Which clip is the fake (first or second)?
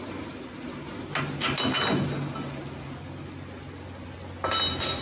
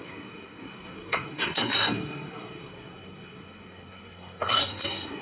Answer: second